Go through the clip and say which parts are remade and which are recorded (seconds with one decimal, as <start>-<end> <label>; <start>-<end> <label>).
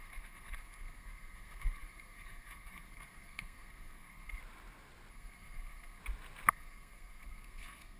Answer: 0.0-4.4 remade; 4.4-5.1 recorded; 5.1-6.0 remade; 6.0-6.5 recorded; 6.5-8.0 remade